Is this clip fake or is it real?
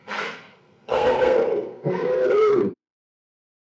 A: fake